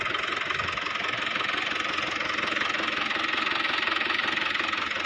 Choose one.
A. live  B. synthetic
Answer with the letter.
A